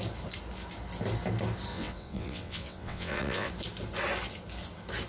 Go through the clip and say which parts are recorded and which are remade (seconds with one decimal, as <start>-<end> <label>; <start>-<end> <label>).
0.0-1.7 recorded; 1.7-3.5 remade; 3.5-5.1 recorded